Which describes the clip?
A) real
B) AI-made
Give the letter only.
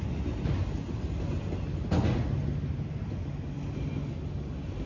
A